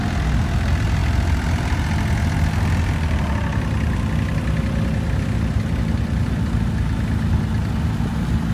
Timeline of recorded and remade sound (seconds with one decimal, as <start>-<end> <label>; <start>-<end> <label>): 0.0-8.5 recorded